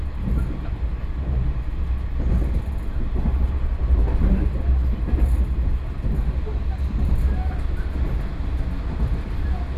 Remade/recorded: recorded